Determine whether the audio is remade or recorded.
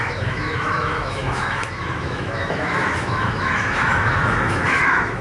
remade